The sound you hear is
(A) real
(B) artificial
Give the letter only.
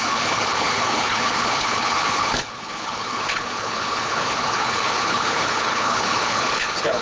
B